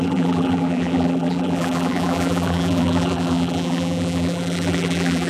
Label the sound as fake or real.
fake